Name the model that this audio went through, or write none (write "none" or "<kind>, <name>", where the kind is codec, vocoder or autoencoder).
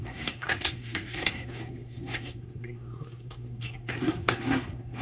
codec, SNAC